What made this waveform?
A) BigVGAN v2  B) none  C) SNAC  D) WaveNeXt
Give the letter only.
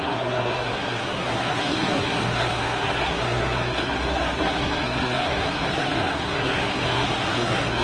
C